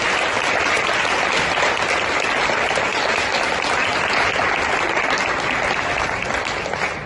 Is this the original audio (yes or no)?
yes